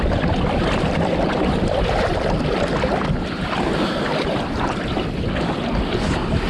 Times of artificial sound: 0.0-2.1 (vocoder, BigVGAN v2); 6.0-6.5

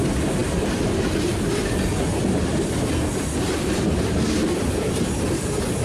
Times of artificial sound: none

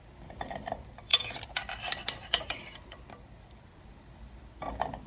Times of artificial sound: 0.0-5.1 (vocoder, BigVGAN v2)

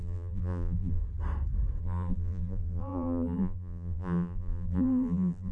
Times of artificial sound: 0.0-1.0 (vocoder, BigVGAN v2); 1.8-5.5

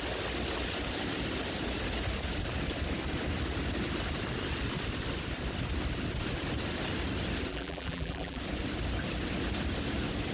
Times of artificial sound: 7.5-8.4 (vocoder, BigVGAN v2)

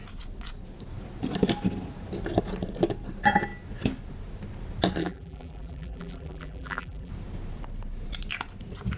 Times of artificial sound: 5.0-7.1 (vocoder, BigVGAN v2)

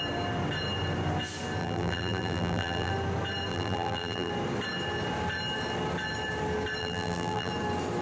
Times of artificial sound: 1.6-2.9 (vocoder, BigVGAN v2); 3.5-4.3; 6.8-7.5